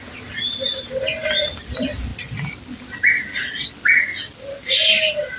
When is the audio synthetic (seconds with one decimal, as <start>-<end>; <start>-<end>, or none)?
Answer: none